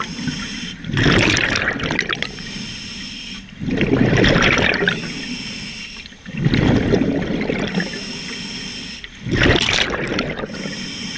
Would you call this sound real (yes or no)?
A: yes